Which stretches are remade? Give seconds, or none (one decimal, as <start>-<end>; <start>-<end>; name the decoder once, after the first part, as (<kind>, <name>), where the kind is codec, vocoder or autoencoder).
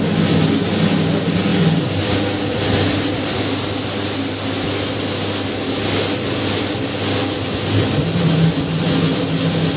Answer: none